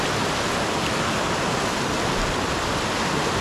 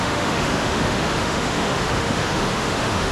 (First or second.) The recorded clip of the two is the first